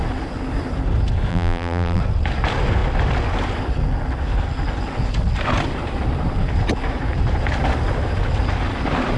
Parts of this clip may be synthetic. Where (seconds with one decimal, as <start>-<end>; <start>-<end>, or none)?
1.3-2.0